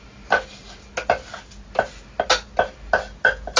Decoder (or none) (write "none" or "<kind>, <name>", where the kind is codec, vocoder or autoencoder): none